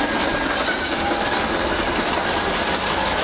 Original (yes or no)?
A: yes